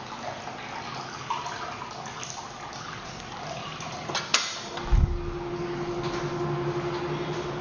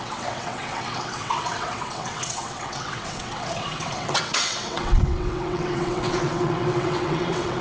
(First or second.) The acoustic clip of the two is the first